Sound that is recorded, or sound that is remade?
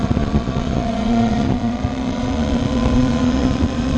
remade